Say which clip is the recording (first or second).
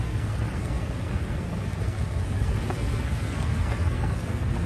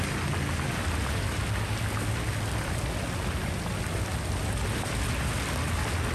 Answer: second